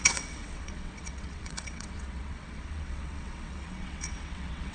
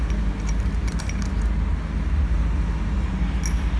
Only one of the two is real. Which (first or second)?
second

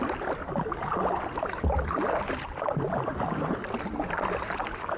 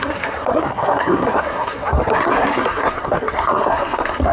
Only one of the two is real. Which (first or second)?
first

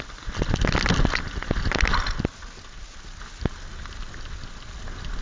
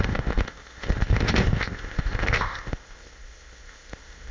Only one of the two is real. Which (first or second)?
first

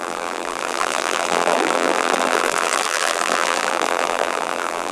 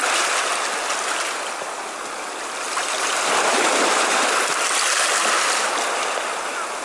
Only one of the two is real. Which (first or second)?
second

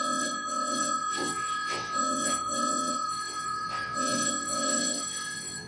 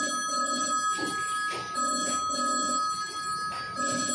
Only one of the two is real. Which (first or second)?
second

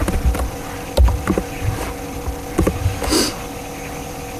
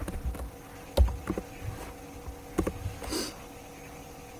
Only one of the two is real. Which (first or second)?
second